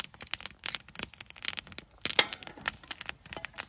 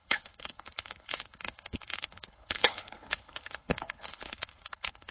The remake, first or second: second